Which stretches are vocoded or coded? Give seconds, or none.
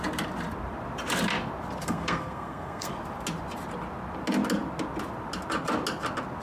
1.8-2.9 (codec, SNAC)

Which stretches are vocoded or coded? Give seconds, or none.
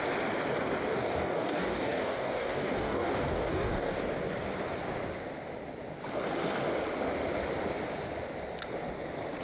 0.9-4.0 (codec, DAC)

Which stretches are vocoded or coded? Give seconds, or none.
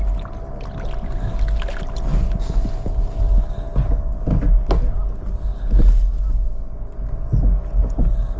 2.1-3.2 (vocoder, Vocos)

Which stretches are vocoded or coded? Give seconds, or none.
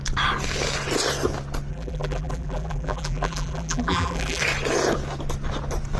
1.7-4.4 (vocoder, BigVGAN v2)